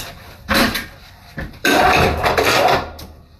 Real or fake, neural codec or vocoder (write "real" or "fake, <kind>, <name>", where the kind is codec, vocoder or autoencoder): fake, vocoder, BigVGAN v2